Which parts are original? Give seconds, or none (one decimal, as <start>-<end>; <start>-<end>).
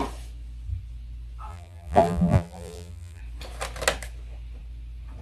0.0-1.5; 3.2-5.2